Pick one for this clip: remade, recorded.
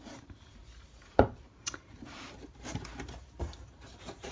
remade